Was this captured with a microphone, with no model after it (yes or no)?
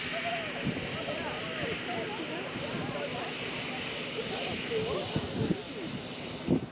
yes